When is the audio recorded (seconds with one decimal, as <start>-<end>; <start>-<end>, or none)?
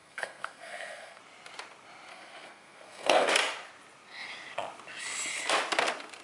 1.2-2.1; 3.3-6.2